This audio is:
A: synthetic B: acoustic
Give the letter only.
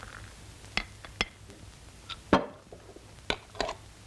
B